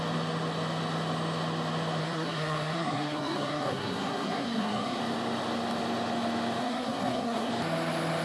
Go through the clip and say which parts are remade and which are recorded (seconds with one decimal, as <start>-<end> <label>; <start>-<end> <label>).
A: 0.0-2.0 recorded; 2.0-5.0 remade; 5.0-6.6 recorded; 6.6-7.5 remade; 7.5-8.2 recorded